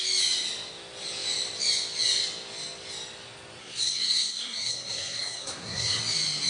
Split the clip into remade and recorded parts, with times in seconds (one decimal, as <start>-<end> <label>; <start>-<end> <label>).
0.0-3.6 recorded; 3.6-6.0 remade; 6.0-6.5 recorded